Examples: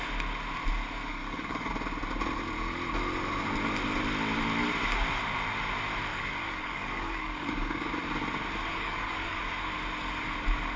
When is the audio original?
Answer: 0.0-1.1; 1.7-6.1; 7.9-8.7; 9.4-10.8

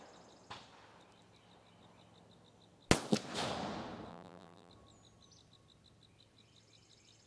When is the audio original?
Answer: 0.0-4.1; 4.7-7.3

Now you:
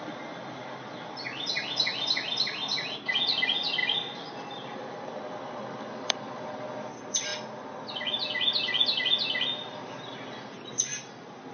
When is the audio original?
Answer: 0.0-3.8; 6.2-11.5